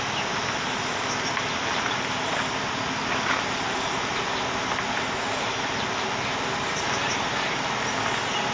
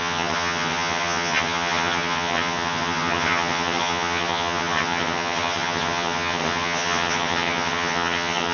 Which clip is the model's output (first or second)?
second